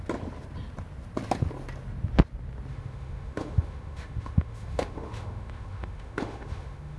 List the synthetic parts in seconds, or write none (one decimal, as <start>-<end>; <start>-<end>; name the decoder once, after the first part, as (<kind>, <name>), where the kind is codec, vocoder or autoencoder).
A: 2.7-7.0 (autoencoder, DAC-VAE)